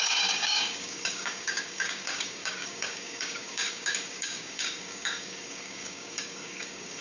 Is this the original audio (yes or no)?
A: no